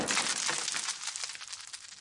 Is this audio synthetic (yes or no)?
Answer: no